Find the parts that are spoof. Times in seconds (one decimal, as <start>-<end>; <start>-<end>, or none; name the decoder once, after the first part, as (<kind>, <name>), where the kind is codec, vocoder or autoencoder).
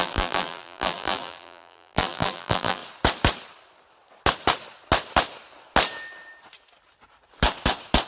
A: 0.0-2.8 (vocoder, BigVGAN v2)